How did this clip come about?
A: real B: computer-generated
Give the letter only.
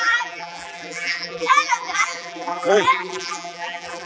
B